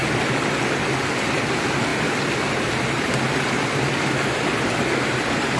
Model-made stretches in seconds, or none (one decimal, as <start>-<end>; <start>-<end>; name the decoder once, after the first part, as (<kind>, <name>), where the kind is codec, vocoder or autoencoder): 1.4-1.9 (vocoder, BigVGAN v2); 5.0-5.6